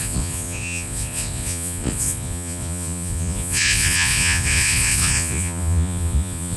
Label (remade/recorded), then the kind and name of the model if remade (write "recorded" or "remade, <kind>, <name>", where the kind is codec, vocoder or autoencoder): remade, vocoder, Vocos